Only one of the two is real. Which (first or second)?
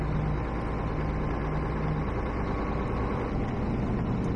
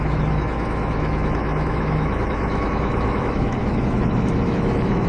first